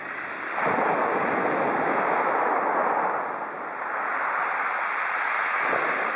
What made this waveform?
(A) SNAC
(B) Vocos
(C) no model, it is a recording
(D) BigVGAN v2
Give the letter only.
C